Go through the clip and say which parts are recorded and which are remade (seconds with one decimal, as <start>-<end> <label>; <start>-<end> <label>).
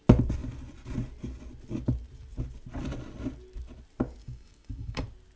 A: 0.0-4.2 recorded; 4.2-5.0 remade; 5.0-5.4 recorded